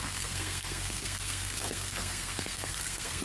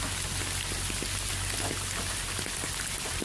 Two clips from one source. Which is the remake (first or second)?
first